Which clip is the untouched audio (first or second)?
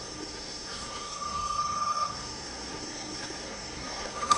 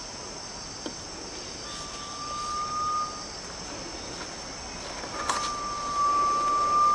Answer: second